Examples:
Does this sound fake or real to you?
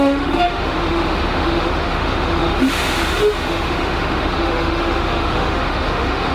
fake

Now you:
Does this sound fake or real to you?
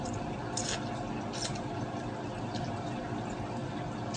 real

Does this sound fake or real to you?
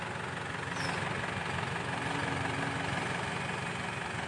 real